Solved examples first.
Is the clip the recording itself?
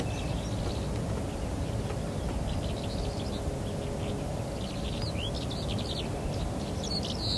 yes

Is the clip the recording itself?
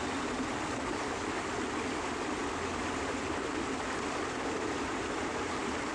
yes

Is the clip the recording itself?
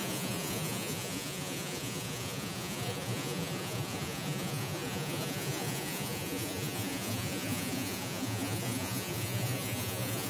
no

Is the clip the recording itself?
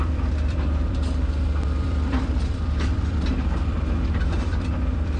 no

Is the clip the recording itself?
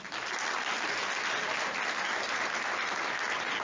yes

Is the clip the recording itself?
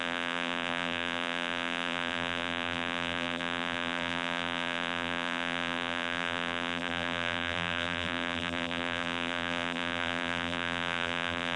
no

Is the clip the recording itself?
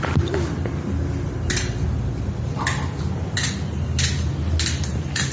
yes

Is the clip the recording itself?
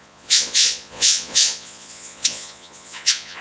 no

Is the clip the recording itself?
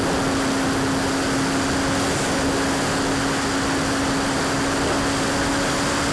yes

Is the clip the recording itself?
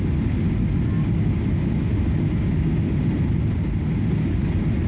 yes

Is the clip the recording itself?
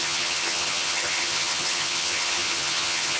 no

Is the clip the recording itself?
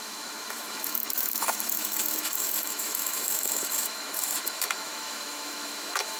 no